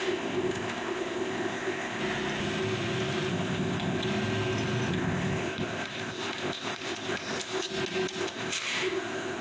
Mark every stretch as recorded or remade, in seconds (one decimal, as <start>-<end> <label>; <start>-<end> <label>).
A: 0.0-2.0 remade; 2.0-3.3 recorded; 3.3-4.0 remade; 4.0-4.9 recorded; 4.9-7.7 remade; 7.7-8.2 recorded; 8.2-9.4 remade